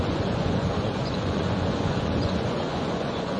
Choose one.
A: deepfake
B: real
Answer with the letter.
A